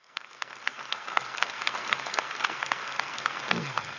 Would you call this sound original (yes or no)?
no